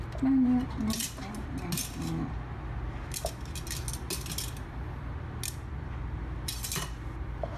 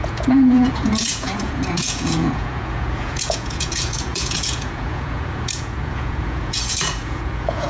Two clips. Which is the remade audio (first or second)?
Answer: second